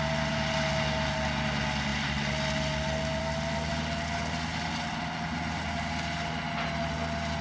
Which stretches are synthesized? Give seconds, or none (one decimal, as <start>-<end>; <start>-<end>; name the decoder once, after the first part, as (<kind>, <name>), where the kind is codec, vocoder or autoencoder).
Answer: none